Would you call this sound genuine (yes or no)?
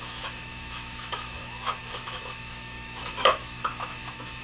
no